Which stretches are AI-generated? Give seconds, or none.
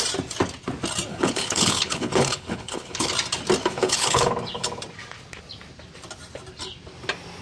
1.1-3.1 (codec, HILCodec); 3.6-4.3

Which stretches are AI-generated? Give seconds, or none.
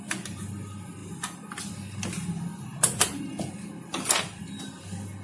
none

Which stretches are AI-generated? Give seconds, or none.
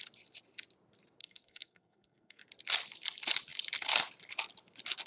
1.2-2.4 (codec, SNAC)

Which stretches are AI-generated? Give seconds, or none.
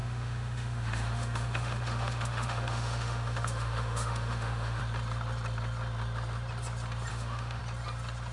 0.0-4.8 (autoencoder, DAC-VAE); 7.1-7.6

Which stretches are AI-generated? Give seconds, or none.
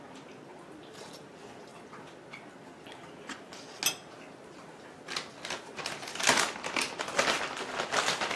0.0-1.7 (vocoder, BigVGAN v2); 2.6-3.8; 5.8-8.4